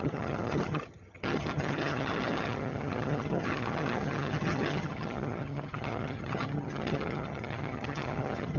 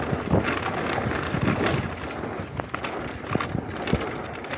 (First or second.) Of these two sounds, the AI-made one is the first